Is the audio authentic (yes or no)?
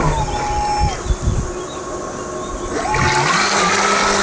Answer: yes